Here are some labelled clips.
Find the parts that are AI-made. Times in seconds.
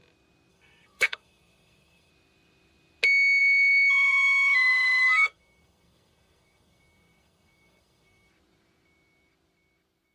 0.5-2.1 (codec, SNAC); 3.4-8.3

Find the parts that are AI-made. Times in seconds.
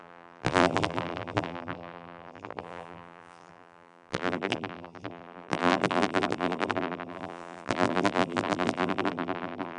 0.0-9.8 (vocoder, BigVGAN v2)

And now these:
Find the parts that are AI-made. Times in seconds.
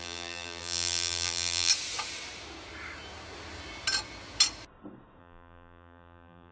0.0-1.7 (vocoder, BigVGAN v2); 5.2-6.5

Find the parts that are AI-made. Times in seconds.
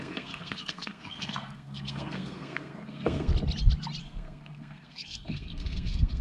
0.0-3.3 (codec, SNAC); 4.0-6.2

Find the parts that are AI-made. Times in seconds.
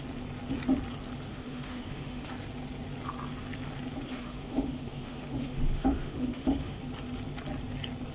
1.3-2.3 (autoencoder, DAC-VAE); 4.0-6.8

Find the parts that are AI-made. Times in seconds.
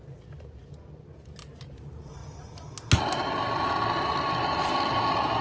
none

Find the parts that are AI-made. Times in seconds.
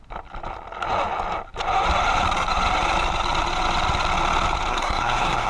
4.7-5.5 (codec, SNAC)